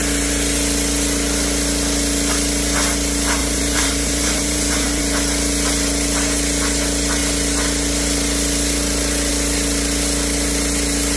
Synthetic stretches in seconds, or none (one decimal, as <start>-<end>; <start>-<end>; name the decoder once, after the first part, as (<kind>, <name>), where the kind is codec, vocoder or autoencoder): 3.4-5.0 (vocoder, BigVGAN v2)